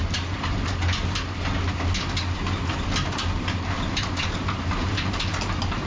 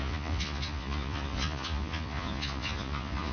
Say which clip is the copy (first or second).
second